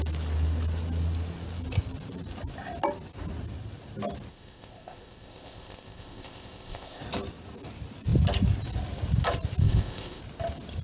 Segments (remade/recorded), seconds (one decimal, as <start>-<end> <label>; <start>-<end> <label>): 0.0-4.3 recorded; 4.3-7.0 remade; 7.0-9.6 recorded; 9.6-10.2 remade; 10.2-10.8 recorded